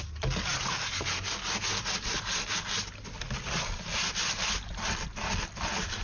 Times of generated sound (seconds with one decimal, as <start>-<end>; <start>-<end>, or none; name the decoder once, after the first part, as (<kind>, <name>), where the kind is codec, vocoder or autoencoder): none